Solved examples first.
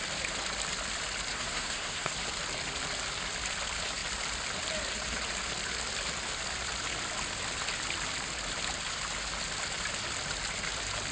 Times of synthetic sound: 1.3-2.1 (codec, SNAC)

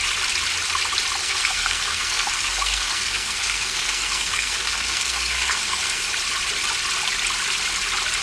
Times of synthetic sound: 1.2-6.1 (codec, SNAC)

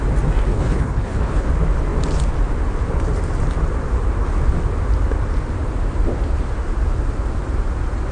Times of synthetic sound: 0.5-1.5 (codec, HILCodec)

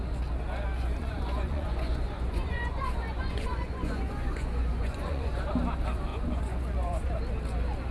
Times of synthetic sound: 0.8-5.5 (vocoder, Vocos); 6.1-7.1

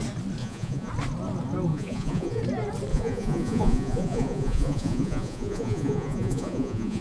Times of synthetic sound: 0.4-0.9 (vocoder, Vocos); 1.7-2.4; 2.9-7.0

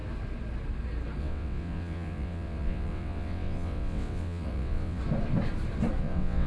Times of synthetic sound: 1.2-5.0 (vocoder, WaveNeXt); 6.0-6.5

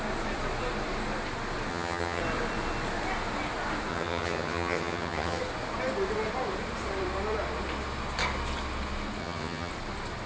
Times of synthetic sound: 1.7-2.2 (vocoder, HiFi-GAN); 3.9-5.4; 9.2-9.7

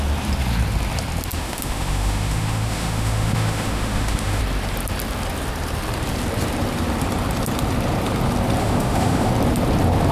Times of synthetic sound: 1.3-4.4 (autoencoder, DAC-VAE); 8.6-9.3